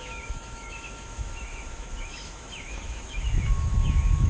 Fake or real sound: fake